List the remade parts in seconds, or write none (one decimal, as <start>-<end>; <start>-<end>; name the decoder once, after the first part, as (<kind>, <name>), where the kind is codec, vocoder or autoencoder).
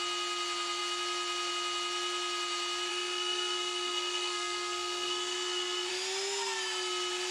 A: 2.9-5.9 (codec, SNAC)